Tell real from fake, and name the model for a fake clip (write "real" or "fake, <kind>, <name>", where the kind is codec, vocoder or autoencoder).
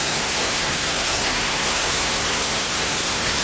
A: fake, codec, SNAC